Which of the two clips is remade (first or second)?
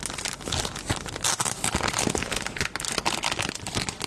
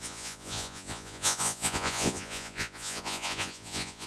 second